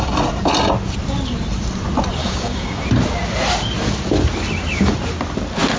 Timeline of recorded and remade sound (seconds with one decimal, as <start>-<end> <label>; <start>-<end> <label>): 0.0-2.2 recorded; 2.2-2.8 remade; 2.8-5.8 recorded